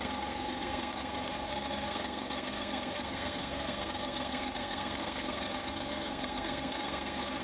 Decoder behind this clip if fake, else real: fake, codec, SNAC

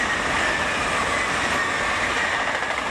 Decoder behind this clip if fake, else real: real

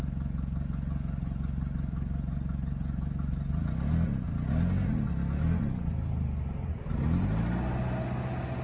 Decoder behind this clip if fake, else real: real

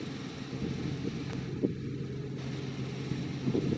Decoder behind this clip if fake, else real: real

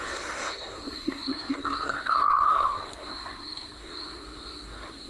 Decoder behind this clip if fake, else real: fake, codec, SNAC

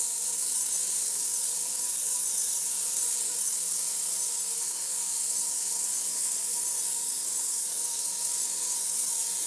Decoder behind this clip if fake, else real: fake, codec, SNAC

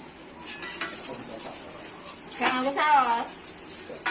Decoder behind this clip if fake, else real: real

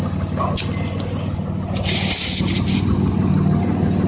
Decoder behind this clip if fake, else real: real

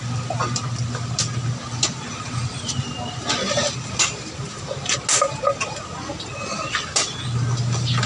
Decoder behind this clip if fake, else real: real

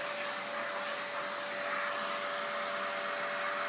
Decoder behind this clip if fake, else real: real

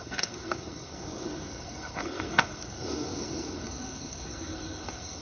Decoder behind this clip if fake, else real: fake, codec, SNAC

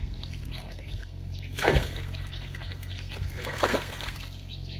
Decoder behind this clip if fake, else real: fake, codec, SNAC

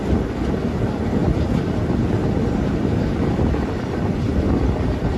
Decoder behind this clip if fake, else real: real